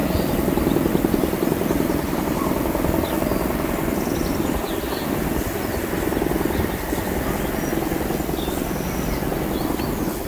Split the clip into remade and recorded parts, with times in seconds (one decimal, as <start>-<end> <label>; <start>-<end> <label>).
0.0-10.3 recorded